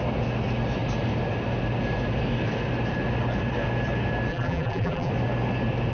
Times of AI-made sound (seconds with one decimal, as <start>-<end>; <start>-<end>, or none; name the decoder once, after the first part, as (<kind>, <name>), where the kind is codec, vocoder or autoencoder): 4.3-5.1 (vocoder, BigVGAN v2)